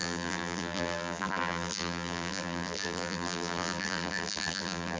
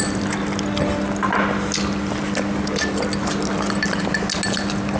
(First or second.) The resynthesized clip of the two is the first